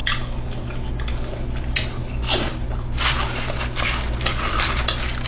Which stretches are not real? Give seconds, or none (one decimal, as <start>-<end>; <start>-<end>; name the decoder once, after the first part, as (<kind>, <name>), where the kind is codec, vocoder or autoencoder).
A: none